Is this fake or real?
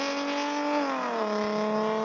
real